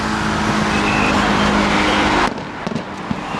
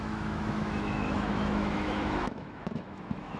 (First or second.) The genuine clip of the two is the first